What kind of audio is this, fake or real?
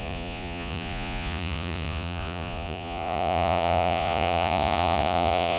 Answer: fake